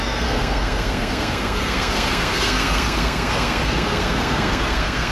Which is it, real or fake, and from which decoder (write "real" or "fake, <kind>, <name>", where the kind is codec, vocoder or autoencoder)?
fake, codec, SNAC